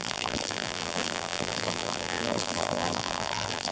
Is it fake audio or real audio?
fake